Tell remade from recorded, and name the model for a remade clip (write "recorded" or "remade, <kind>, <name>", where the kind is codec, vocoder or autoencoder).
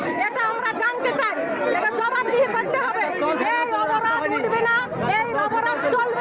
recorded